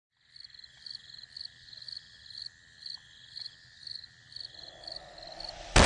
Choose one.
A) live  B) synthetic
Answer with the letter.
A